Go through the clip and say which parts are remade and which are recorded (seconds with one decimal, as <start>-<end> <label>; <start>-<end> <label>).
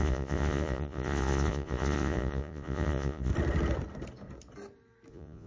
0.0-3.3 remade; 3.3-5.1 recorded; 5.1-5.5 remade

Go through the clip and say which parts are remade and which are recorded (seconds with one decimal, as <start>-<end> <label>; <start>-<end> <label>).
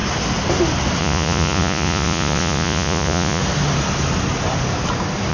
0.0-1.0 recorded; 1.0-3.4 remade; 3.4-5.3 recorded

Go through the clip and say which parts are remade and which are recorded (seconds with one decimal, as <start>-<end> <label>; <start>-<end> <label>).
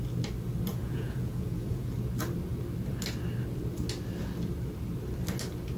0.0-0.7 recorded; 0.7-1.9 remade; 1.9-5.8 recorded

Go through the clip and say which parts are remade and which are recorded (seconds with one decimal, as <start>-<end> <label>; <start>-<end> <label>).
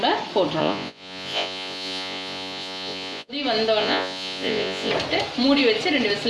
0.0-0.6 recorded; 0.6-3.3 remade; 3.3-3.8 recorded; 3.8-4.9 remade; 4.9-6.3 recorded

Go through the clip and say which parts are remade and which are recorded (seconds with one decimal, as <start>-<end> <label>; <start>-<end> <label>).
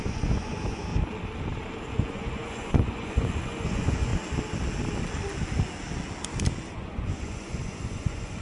0.0-0.9 remade; 0.9-1.9 recorded; 1.9-4.1 remade; 4.1-6.7 recorded; 6.7-8.4 remade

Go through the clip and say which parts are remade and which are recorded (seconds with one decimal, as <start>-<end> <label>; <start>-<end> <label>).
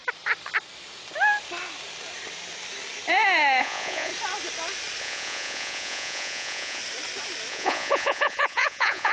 0.0-3.6 recorded; 3.6-4.1 remade; 4.1-5.0 recorded; 5.0-6.8 remade; 6.8-7.5 recorded; 7.5-9.1 remade